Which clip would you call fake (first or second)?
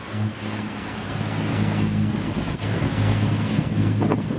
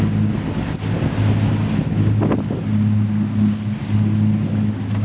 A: first